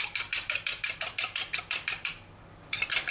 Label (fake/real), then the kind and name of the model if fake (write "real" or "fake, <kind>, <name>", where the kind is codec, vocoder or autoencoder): fake, vocoder, BigVGAN v2